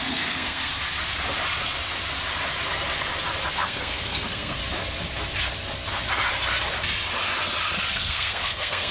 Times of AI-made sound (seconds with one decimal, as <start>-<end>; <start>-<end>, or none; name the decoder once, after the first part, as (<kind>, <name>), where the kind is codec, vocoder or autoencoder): 0.0-0.7 (codec, SNAC); 3.5-4.6; 7.9-8.9